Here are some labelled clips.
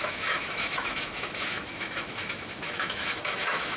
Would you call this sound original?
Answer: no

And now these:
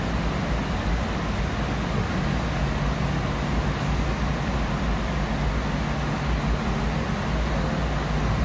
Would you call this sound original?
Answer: yes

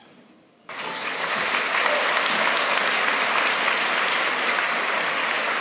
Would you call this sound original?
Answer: yes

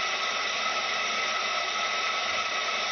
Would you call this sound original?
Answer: yes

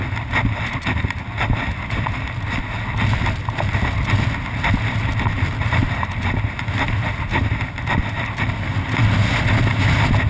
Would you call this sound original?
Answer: yes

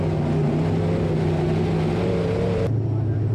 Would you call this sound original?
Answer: yes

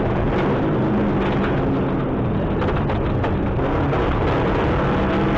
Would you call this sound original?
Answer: yes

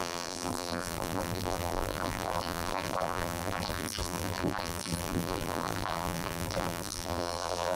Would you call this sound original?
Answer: no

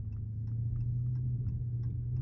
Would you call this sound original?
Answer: yes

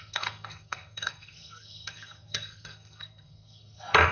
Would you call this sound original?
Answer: no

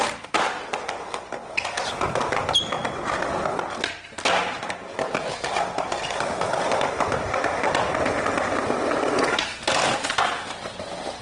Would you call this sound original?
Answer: yes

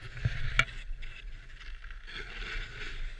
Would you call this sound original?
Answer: yes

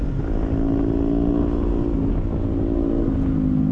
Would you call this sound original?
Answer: yes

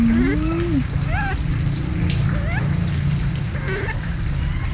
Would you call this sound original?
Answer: yes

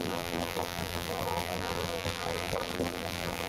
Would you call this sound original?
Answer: no